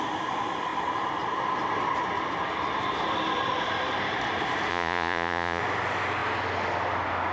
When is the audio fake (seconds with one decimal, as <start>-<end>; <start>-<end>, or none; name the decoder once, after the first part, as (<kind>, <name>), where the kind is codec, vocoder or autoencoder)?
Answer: 4.7-5.6 (vocoder, Vocos)